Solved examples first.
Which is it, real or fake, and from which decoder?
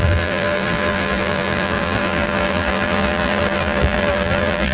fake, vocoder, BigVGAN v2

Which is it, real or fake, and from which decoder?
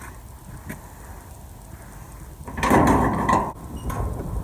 real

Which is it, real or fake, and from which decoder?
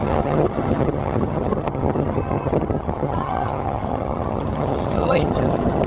fake, vocoder, HiFi-GAN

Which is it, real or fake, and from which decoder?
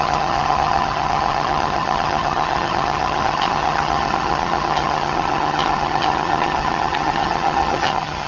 fake, vocoder, HiFi-GAN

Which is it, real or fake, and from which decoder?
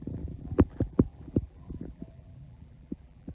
fake, vocoder, BigVGAN v2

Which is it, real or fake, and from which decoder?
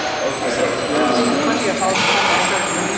real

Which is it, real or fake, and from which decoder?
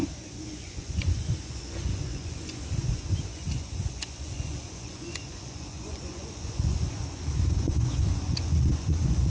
fake, vocoder, Vocos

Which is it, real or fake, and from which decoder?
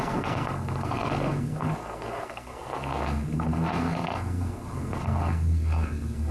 fake, codec, SNAC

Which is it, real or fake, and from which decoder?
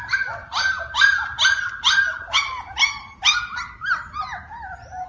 real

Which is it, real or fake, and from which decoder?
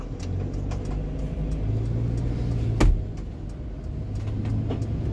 real